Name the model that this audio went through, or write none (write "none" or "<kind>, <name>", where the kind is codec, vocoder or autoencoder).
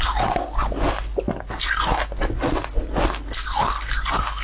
none